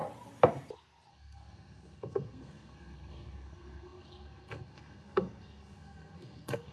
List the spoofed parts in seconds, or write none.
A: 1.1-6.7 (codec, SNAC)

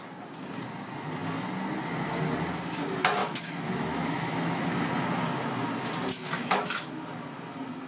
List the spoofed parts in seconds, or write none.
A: 3.2-4.6 (autoencoder, DAC-VAE); 6.1-6.9

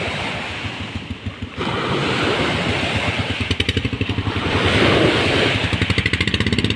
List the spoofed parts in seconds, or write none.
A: none

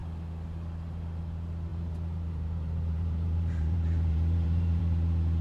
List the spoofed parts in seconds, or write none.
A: 1.7-4.8 (vocoder, BigVGAN v2)

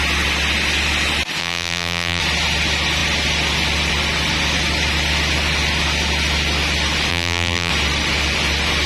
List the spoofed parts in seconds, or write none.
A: 1.4-2.2 (vocoder, BigVGAN v2); 7.1-7.7

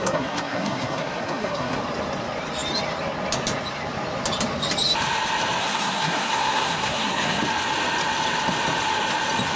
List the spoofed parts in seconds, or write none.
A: 0.0-1.8 (codec, SNAC); 5.6-7.4

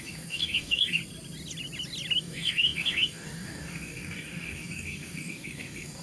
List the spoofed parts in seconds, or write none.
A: 0.0-1.0 (codec, DAC); 2.2-6.0

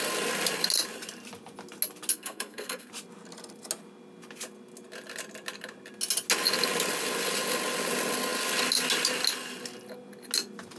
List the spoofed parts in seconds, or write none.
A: 2.1-2.9 (codec, SNAC)